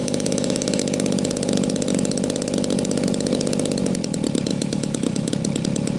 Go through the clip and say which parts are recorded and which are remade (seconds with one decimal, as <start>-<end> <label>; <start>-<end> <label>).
0.0-0.8 remade; 0.8-4.5 recorded; 4.5-5.3 remade; 5.3-6.0 recorded